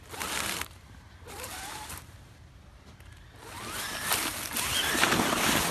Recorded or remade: recorded